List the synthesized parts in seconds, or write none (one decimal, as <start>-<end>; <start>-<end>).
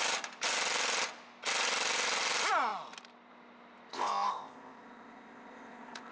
3.9-6.1